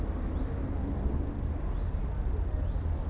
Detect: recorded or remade recorded